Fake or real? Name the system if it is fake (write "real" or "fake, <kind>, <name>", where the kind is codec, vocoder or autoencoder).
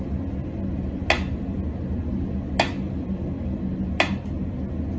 real